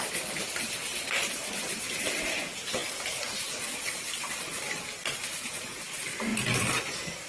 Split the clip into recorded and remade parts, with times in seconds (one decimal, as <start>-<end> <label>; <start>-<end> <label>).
0.0-5.3 recorded; 5.3-5.8 remade; 5.8-7.3 recorded